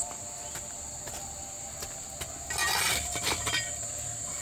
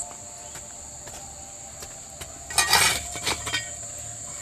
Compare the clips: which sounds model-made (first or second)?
first